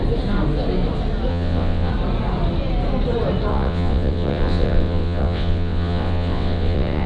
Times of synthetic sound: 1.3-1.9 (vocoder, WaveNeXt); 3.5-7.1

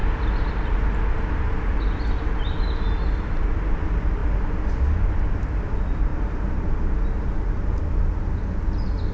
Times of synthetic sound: none

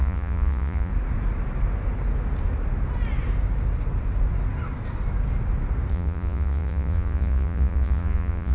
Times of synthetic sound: 0.0-0.9 (vocoder, Vocos); 5.9-8.5